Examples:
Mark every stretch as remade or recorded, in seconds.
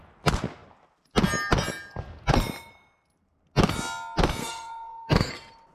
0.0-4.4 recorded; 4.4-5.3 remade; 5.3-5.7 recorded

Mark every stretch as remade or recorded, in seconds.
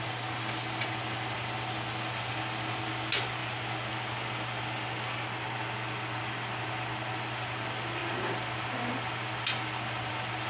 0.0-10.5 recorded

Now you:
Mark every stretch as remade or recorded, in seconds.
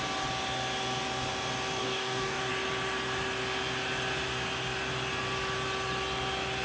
0.0-1.8 recorded; 1.8-2.5 remade; 2.5-6.6 recorded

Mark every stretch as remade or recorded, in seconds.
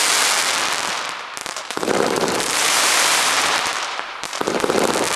0.0-1.4 recorded; 1.4-4.5 remade; 4.5-5.2 recorded